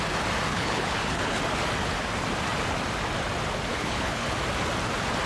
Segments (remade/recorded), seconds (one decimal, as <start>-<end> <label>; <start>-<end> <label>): 0.0-0.5 recorded; 0.5-1.4 remade; 1.4-3.7 recorded; 3.7-4.3 remade; 4.3-5.3 recorded